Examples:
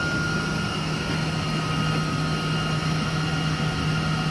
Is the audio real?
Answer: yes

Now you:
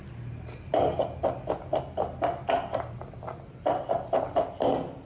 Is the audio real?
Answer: yes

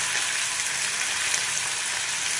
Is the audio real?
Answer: no